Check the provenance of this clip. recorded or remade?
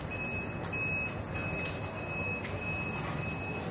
recorded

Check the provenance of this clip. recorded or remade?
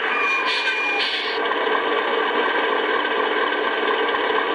recorded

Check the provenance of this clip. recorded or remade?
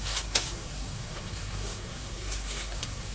remade